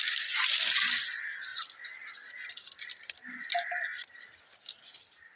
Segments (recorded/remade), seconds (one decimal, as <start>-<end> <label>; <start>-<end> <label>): 0.0-5.4 recorded